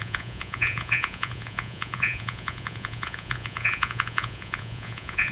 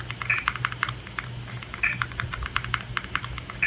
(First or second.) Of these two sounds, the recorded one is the second